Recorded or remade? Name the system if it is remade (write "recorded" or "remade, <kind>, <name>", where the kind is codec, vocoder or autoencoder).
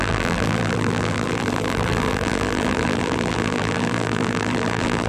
remade, vocoder, BigVGAN v2